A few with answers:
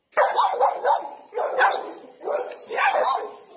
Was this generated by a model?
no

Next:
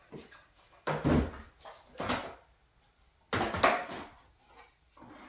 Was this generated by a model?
no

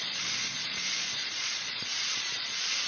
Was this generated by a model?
yes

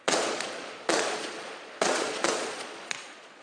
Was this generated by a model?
yes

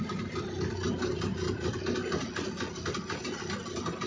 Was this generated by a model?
no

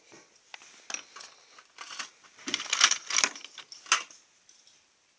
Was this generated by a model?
no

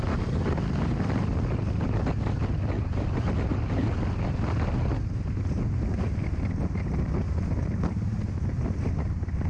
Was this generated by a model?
no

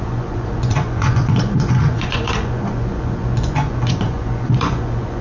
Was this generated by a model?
yes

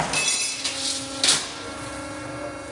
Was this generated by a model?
no